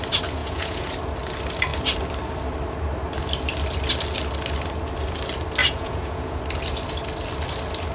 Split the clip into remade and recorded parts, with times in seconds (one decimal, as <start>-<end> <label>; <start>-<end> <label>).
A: 0.0-0.4 recorded; 0.4-0.9 remade; 0.9-5.6 recorded; 5.6-6.4 remade; 6.4-7.9 recorded

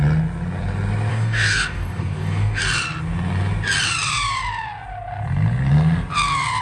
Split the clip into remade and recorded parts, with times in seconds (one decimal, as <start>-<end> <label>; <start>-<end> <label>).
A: 0.0-1.1 recorded; 1.1-2.6 remade; 2.6-6.6 recorded

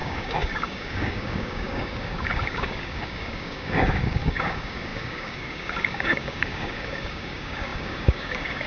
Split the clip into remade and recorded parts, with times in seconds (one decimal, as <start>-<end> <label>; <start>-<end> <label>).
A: 0.0-8.7 remade

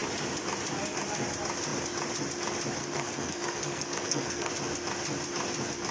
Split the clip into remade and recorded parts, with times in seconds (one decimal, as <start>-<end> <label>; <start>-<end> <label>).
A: 0.0-2.8 recorded; 2.8-4.5 remade; 4.5-5.9 recorded

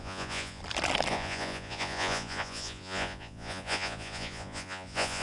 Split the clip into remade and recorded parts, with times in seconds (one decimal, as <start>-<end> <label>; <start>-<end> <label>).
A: 0.0-0.6 remade; 0.6-1.1 recorded; 1.1-5.2 remade

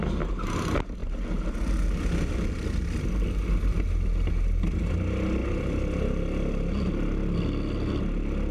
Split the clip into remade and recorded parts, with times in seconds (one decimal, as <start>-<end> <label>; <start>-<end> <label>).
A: 0.0-8.5 recorded

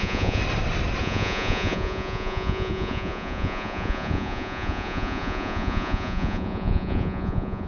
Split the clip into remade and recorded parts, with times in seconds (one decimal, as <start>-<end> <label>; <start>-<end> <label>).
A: 0.0-0.4 remade; 0.4-1.0 recorded; 1.0-7.7 remade

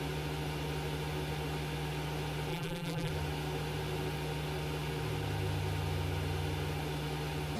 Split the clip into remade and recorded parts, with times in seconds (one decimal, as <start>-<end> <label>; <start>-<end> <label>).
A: 0.0-2.5 recorded; 2.5-3.1 remade; 3.1-7.6 recorded